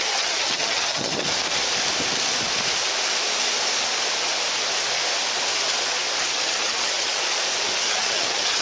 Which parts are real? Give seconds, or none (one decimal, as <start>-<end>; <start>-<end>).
1.3-6.2; 7.2-7.9